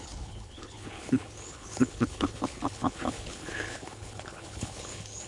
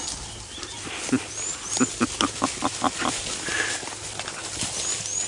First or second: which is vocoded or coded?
first